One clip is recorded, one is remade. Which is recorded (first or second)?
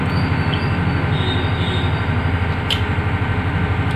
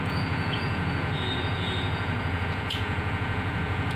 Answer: first